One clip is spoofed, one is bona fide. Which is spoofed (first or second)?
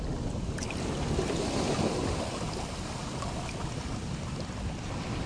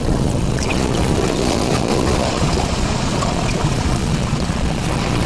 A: second